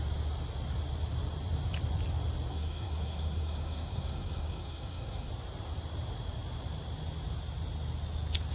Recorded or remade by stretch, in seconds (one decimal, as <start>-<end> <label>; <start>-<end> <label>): 0.0-2.5 recorded; 2.5-5.3 remade; 5.3-8.5 recorded